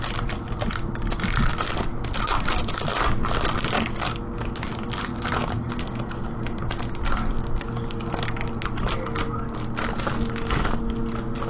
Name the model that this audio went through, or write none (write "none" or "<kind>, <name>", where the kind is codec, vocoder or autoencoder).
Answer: none